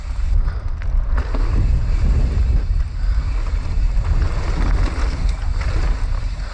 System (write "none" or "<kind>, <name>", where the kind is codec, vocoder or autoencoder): none